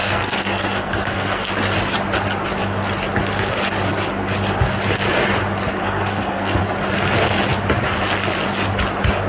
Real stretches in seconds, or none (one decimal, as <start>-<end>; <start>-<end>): 1.5-5.8; 6.6-9.3